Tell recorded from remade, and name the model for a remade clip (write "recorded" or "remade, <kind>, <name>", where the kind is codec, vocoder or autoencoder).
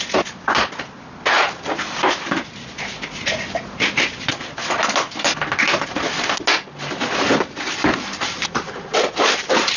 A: recorded